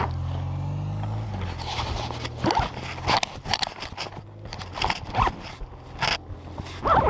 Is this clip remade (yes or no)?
no